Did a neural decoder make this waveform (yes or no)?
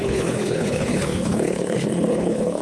yes